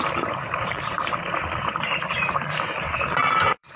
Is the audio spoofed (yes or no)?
yes